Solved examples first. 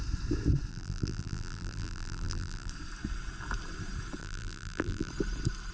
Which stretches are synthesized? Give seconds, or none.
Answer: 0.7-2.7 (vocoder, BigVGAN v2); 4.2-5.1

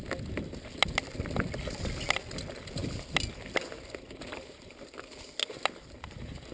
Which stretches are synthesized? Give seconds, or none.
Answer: none

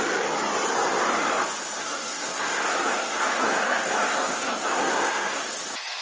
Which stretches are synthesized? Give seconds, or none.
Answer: 1.8-5.4 (codec, SNAC)

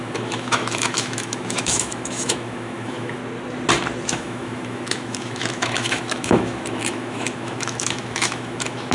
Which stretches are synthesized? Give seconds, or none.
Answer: 0.0-3.2 (autoencoder, DAC-VAE); 4.1-8.9

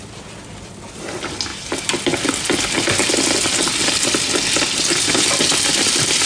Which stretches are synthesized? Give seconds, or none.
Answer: 0.0-1.5 (vocoder, BigVGAN v2); 5.2-6.3